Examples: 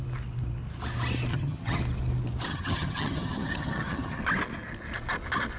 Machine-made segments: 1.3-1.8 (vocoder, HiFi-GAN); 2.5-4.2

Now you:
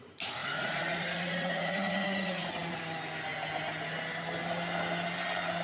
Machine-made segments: 0.4-2.8 (vocoder, Vocos)

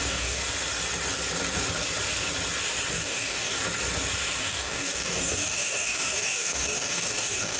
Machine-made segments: 0.0-0.4 (codec, DAC); 2.9-3.6; 4.4-7.6

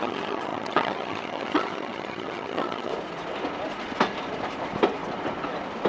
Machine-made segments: 0.0-2.9 (vocoder, HiFi-GAN)

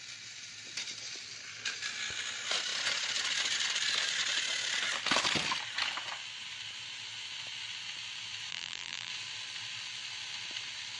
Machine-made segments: 8.5-9.1 (vocoder, BigVGAN v2)

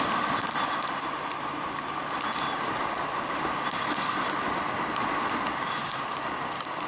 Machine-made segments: none

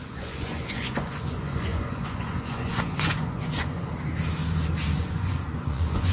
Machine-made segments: 0.0-3.8 (vocoder, Vocos); 5.0-6.1